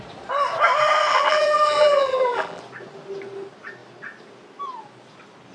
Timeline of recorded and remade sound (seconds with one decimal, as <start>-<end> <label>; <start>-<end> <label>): 0.0-1.1 recorded; 1.1-2.6 remade; 2.6-5.5 recorded